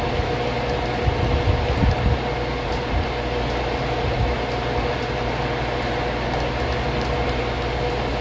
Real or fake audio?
real